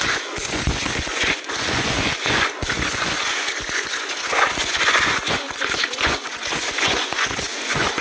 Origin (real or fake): fake